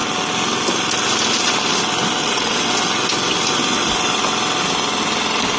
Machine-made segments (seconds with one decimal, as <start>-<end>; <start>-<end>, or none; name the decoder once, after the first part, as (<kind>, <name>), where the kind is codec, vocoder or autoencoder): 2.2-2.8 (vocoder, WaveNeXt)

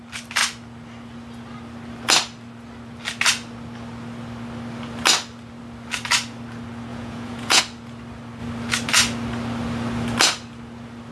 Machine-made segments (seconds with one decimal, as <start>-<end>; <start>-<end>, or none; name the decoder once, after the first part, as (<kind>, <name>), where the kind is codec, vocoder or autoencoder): 6.9-7.6 (vocoder, Vocos)

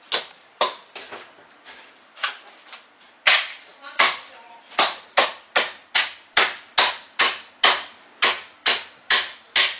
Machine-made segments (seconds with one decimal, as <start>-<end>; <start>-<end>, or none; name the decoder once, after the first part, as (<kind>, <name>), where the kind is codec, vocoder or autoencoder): none

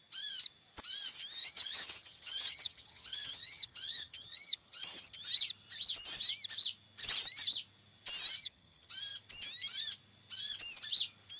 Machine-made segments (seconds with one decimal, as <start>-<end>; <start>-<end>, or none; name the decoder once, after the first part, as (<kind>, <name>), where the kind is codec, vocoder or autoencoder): 1.4-5.2 (vocoder, HiFi-GAN); 8.4-8.9

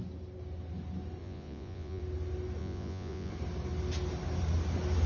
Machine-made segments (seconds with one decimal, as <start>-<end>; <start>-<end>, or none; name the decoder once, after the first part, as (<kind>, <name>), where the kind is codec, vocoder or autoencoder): 1.2-2.0 (vocoder, Vocos); 2.6-3.3

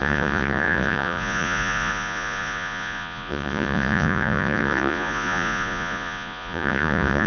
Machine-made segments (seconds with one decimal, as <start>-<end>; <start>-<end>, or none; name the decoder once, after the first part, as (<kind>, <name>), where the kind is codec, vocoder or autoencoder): 0.0-7.3 (vocoder, Vocos)

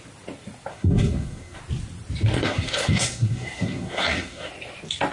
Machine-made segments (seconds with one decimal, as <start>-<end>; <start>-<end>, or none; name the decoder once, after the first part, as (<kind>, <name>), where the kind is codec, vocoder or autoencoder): 0.7-1.6 (codec, SNAC); 2.4-4.5